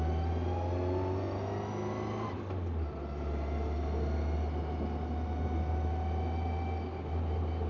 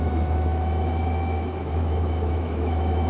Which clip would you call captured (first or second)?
first